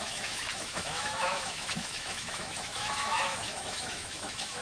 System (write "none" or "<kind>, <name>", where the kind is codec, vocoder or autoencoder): autoencoder, DAC-VAE